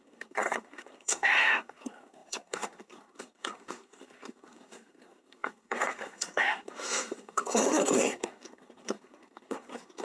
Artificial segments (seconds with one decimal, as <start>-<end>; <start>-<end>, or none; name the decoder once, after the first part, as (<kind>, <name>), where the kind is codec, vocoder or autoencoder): 0.0-10.0 (codec, SNAC)